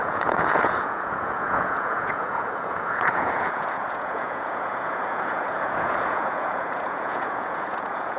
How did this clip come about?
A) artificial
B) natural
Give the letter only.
A